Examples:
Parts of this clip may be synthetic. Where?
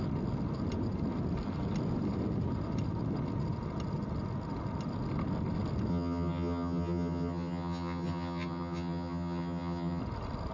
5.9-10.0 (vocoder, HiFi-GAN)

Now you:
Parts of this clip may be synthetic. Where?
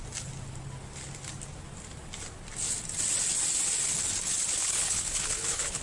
4.5-5.8 (codec, HILCodec)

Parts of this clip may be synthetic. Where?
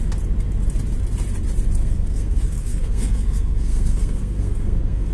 1.8-5.1 (codec, SNAC)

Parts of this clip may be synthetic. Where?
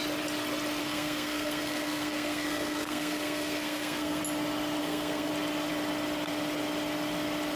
0.8-4.2 (codec, SNAC); 4.8-5.3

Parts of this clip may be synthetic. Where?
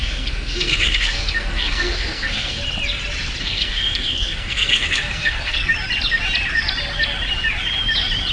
0.0-2.6 (codec, SNAC); 3.4-5.7